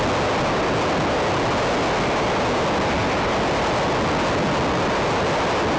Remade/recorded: recorded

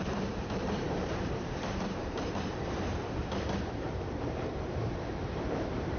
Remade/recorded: remade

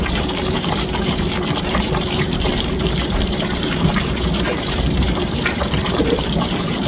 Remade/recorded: remade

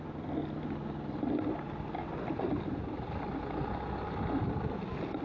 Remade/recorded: remade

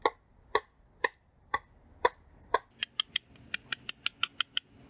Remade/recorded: recorded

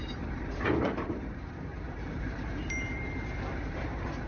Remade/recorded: remade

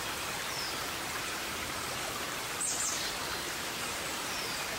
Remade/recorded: recorded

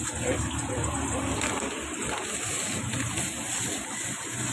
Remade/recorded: recorded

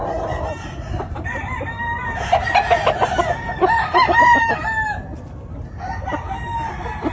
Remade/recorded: recorded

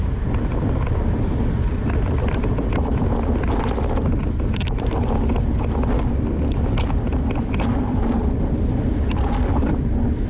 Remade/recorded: recorded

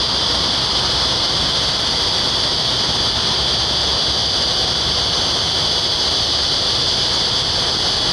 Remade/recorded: recorded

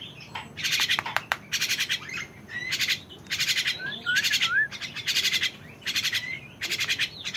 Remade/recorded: remade